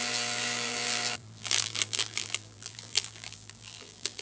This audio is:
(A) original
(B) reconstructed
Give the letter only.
B